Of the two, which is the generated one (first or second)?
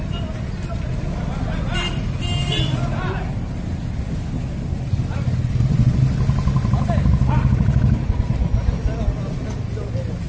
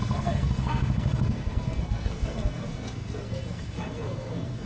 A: second